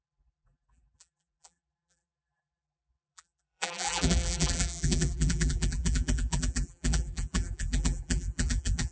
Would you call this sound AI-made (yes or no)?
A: yes